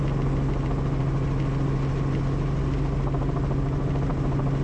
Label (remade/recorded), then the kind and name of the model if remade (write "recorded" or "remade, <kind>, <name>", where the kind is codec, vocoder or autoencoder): recorded